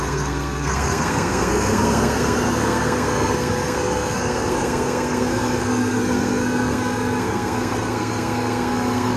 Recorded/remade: remade